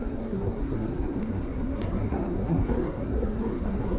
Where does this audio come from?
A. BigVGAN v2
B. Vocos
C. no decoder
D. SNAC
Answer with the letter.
D